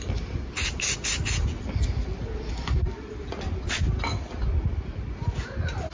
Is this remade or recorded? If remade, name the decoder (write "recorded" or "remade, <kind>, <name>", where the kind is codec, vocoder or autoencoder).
recorded